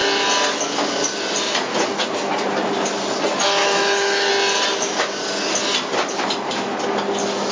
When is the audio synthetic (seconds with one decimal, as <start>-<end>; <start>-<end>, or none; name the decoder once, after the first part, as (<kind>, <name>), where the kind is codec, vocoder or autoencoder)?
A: 3.6-4.3 (autoencoder, DAC-VAE)